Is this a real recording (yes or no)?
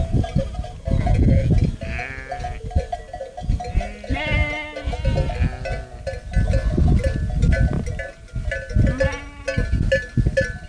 yes